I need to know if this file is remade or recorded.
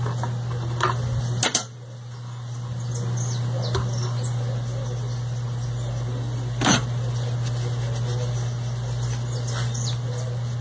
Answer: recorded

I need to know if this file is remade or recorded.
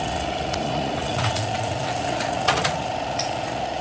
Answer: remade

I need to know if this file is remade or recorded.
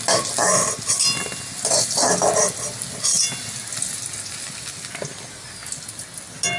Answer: recorded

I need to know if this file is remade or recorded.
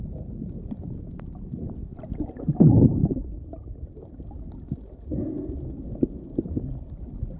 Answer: recorded